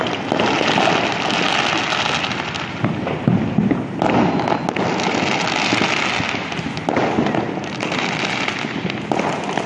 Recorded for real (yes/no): yes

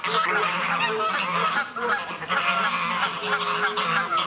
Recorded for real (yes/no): yes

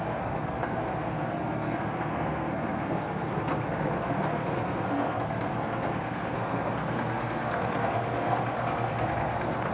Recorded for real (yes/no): no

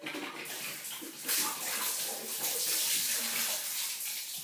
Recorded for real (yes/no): yes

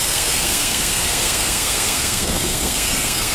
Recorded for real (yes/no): no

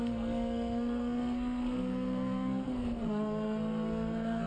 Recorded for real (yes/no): no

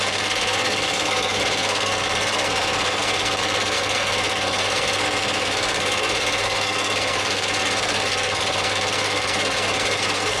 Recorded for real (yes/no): no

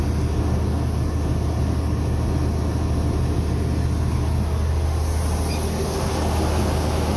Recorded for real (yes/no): yes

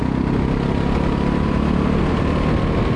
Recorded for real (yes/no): yes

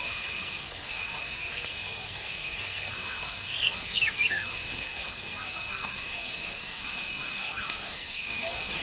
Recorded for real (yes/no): no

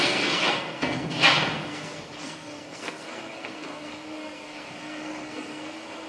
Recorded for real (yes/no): no